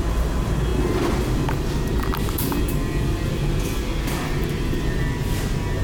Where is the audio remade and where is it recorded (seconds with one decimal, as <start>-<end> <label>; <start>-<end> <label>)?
0.0-5.8 recorded